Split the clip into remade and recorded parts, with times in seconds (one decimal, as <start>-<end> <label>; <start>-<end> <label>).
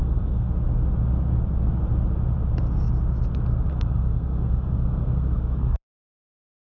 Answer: 0.0-0.5 remade; 0.5-3.7 recorded; 3.7-6.7 remade